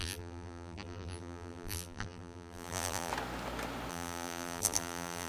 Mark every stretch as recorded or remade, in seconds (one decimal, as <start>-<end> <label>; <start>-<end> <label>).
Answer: 0.0-3.1 remade; 3.1-3.9 recorded; 3.9-5.3 remade